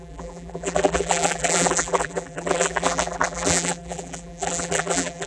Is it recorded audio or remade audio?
remade